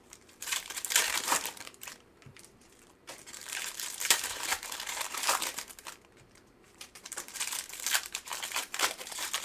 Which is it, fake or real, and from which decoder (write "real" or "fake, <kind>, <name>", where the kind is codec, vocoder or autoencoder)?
fake, vocoder, BigVGAN v2